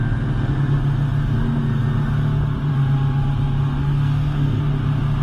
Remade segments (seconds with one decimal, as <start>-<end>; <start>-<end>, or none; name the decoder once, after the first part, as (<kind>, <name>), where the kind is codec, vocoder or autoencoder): 3.8-4.6 (codec, SNAC)